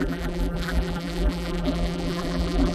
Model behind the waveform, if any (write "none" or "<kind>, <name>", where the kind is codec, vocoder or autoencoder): vocoder, BigVGAN v2